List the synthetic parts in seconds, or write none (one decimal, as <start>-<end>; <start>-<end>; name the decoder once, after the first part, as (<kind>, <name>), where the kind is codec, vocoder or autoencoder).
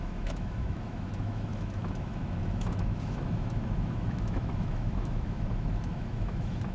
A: 0.0-6.7 (autoencoder, DAC-VAE)